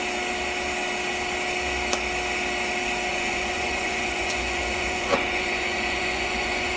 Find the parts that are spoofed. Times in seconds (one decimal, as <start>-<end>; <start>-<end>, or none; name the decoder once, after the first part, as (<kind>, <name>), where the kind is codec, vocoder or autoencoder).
3.1-6.8 (vocoder, Vocos)